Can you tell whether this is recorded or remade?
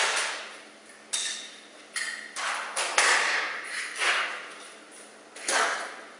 recorded